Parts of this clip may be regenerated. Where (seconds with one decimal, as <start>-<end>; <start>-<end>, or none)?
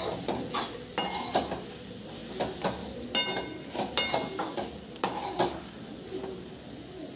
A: none